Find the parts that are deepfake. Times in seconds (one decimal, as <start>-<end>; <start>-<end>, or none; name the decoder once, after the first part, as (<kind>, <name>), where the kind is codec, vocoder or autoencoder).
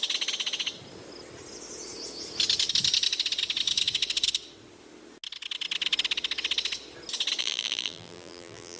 7.4-8.8 (vocoder, BigVGAN v2)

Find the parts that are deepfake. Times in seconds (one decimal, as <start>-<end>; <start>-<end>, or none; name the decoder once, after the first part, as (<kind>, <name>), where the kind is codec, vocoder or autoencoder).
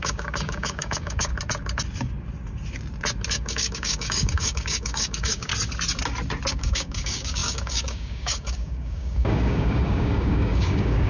0.0-1.3 (codec, DAC); 3.3-5.5; 6.5-11.1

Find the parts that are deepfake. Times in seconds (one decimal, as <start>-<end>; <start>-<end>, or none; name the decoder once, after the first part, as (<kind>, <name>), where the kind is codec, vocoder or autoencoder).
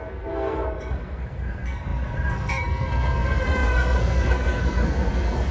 0.0-5.5 (codec, SNAC)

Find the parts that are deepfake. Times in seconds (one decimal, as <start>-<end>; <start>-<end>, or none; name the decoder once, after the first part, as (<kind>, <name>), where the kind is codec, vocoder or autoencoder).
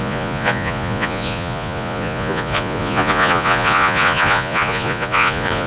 0.0-5.7 (vocoder, Vocos)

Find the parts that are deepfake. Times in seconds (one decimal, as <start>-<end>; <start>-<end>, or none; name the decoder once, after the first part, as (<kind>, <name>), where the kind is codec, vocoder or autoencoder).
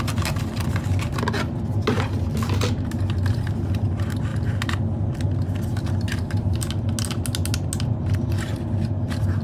none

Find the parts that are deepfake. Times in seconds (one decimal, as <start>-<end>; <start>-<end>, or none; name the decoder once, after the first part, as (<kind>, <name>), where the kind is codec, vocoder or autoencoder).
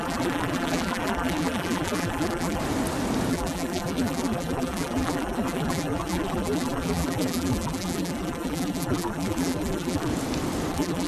0.0-2.6 (vocoder, BigVGAN v2); 3.3-10.1; 10.7-11.1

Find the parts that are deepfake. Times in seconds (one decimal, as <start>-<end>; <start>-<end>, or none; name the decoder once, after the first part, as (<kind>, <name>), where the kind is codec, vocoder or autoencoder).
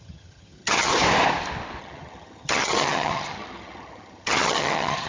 0.0-0.9 (vocoder, HiFi-GAN); 1.8-5.1